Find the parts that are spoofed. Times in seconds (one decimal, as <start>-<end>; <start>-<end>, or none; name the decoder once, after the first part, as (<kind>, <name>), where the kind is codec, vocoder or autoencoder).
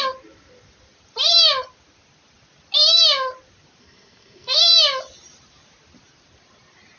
3.8-4.6 (codec, SNAC)